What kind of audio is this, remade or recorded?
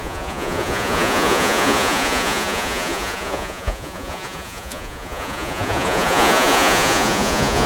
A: remade